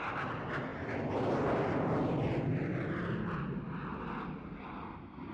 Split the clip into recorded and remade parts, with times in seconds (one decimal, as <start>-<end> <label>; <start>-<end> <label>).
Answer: 0.0-5.3 recorded